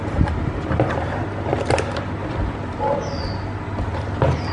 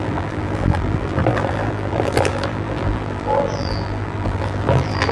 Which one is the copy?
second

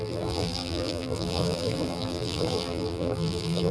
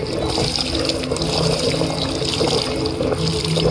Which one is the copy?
first